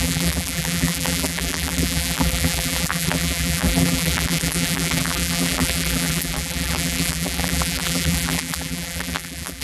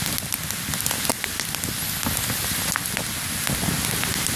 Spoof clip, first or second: first